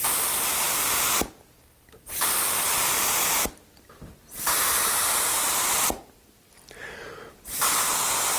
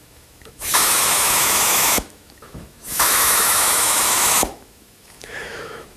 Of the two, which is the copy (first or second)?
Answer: second